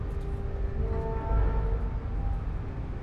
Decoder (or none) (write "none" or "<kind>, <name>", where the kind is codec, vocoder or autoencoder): none